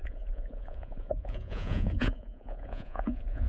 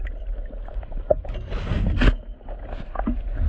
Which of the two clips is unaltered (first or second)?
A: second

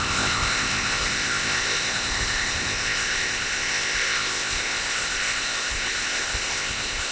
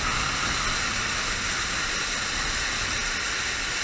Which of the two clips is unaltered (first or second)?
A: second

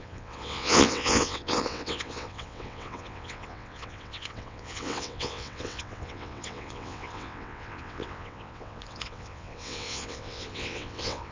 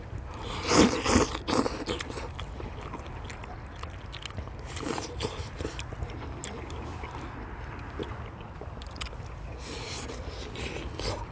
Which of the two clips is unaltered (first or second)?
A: second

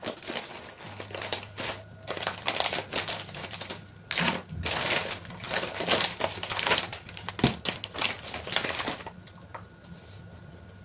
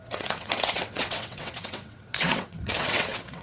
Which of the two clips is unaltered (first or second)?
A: first